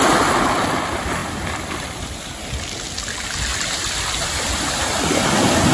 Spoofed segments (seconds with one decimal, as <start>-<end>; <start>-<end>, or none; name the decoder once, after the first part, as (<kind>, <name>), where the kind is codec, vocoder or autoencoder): 1.2-2.4 (vocoder, BigVGAN v2); 3.5-5.1